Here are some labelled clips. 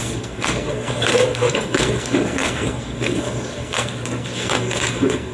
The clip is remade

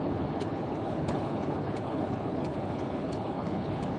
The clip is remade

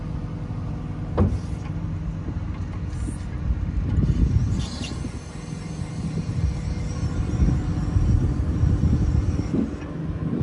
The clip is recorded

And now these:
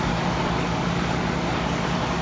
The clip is remade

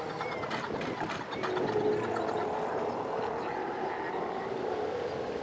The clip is recorded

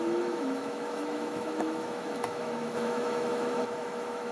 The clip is remade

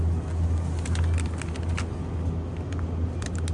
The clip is recorded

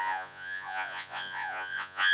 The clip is remade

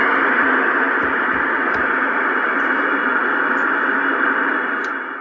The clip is recorded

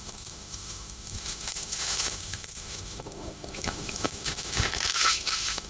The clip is remade